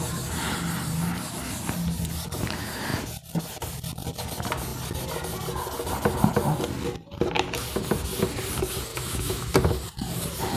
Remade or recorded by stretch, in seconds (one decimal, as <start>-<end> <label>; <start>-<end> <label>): 0.0-8.9 recorded; 8.9-9.5 remade; 9.5-10.6 recorded